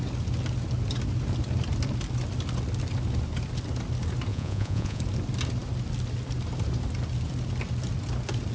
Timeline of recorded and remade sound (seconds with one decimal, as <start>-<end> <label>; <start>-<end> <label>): 0.0-4.3 recorded; 4.3-5.0 remade; 5.0-8.5 recorded